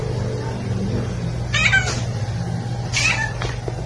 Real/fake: real